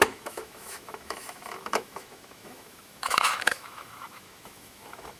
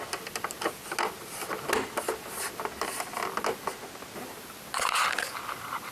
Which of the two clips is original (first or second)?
second